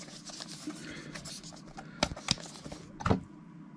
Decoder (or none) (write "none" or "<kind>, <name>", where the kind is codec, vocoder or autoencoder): none